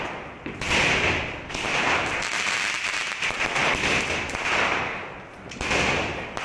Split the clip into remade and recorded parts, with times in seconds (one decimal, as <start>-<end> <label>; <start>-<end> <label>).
0.0-6.4 recorded